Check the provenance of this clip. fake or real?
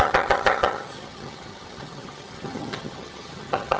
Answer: fake